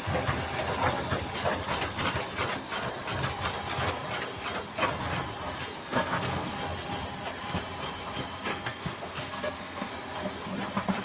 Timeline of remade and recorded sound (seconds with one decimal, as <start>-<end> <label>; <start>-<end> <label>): 0.0-5.8 recorded; 5.8-6.6 remade; 6.6-8.5 recorded; 8.5-9.9 remade; 9.9-11.0 recorded